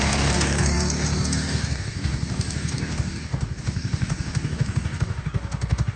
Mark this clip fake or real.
fake